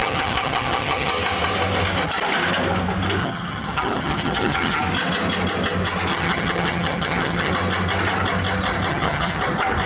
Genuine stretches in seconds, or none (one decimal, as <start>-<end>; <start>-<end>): 1.1-3.2; 4.8-6.1; 7.5-8.9; 9.4-9.9